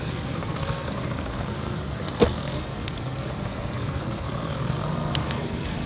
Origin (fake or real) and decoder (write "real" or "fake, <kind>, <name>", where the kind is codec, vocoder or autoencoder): fake, codec, SNAC